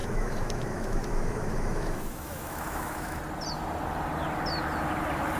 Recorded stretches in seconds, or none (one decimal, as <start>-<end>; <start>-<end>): 3.2-5.4